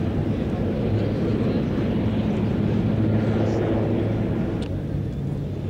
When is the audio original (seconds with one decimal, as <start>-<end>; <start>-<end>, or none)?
0.0-5.7